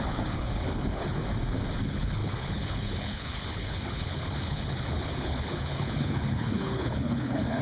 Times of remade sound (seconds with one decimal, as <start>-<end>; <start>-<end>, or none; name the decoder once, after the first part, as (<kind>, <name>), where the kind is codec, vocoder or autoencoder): 0.0-1.2 (codec, HILCodec); 1.8-7.6